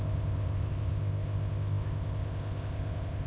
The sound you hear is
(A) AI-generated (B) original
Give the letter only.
A